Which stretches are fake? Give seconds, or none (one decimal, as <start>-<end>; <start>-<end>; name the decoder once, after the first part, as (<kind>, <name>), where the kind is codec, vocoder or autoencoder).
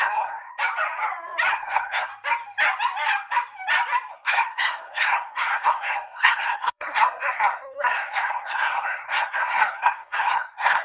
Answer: 0.0-0.5 (codec, SNAC); 1.5-2.1; 4.1-10.8